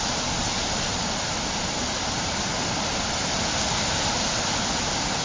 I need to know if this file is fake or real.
real